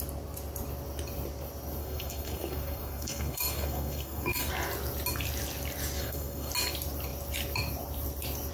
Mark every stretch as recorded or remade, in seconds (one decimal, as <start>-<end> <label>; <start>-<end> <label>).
0.0-1.8 recorded; 1.8-4.5 remade; 4.5-6.0 recorded; 6.0-6.5 remade; 6.5-8.5 recorded